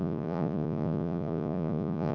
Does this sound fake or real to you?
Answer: fake